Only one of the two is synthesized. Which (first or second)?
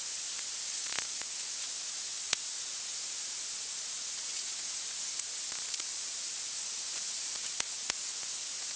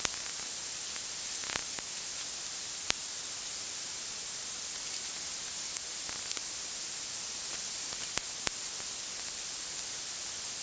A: first